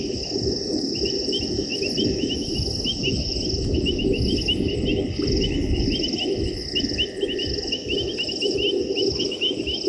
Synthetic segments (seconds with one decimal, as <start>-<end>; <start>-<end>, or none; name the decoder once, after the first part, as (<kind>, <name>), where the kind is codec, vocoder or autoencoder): none